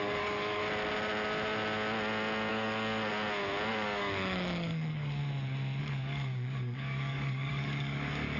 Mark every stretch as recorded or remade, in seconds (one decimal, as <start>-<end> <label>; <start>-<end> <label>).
0.0-0.6 remade; 0.6-2.5 recorded; 2.5-3.1 remade; 3.1-3.7 recorded; 3.7-5.2 remade; 5.2-5.8 recorded; 5.8-8.4 remade